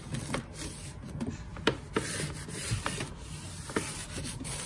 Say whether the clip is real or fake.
real